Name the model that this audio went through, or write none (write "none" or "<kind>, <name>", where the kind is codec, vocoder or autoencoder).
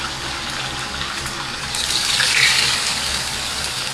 codec, DAC